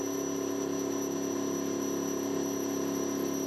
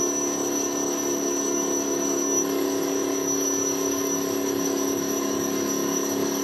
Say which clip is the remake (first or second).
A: second